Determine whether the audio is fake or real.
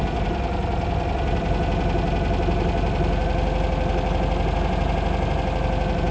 real